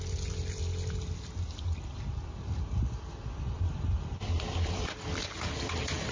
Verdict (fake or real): real